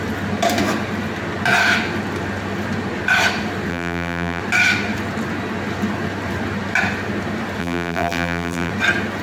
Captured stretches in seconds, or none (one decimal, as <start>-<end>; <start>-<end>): 0.0-3.7; 4.4-7.6; 8.7-9.2